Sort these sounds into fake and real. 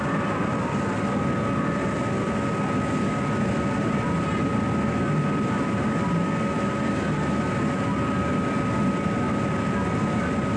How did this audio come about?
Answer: real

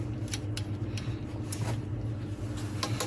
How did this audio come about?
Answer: real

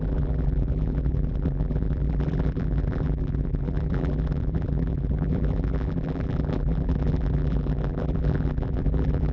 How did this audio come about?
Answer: fake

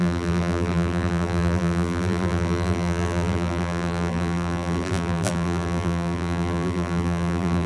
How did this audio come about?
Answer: fake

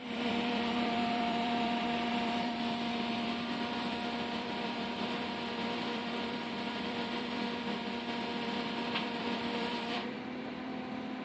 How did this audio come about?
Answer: fake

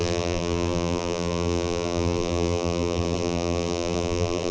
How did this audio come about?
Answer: fake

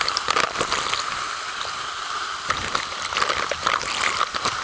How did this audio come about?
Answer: fake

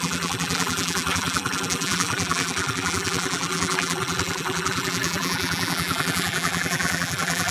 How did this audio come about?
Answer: fake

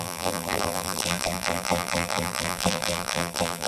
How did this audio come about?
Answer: fake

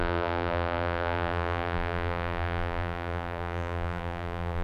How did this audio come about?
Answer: fake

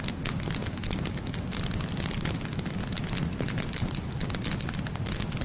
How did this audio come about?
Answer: real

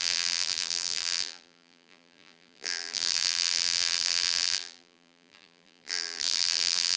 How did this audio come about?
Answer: fake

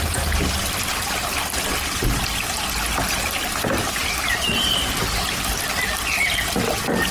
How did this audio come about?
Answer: real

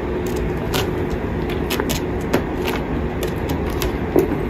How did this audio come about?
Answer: real